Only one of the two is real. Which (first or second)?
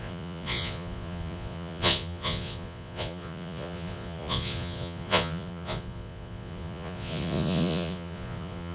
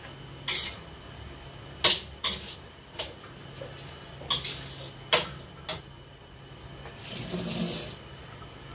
second